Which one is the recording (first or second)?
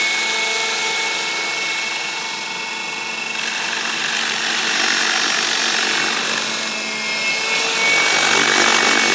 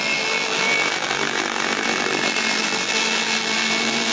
first